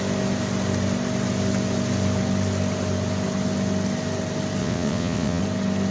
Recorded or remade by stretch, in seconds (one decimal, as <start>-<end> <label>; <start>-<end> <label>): 0.0-4.6 recorded; 4.6-5.4 remade; 5.4-5.9 recorded